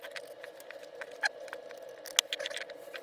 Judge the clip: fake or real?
real